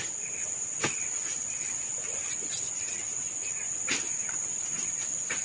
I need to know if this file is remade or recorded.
recorded